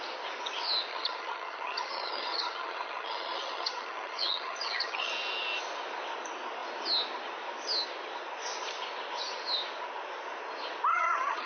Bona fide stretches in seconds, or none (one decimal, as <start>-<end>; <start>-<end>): 0.0-0.9; 5.1-10.9